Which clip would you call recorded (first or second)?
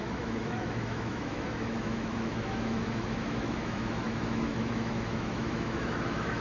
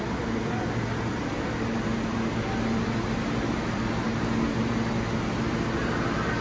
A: second